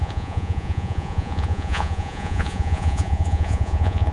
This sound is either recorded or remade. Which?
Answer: remade